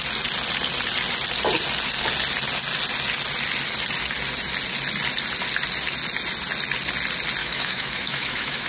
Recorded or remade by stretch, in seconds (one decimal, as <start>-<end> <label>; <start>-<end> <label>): 0.0-7.4 recorded; 7.4-8.7 remade